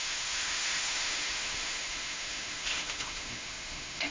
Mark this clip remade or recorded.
remade